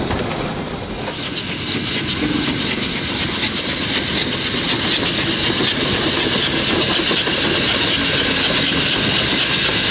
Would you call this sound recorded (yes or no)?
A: yes